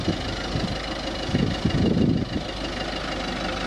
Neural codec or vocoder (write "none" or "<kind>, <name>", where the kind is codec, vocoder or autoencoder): none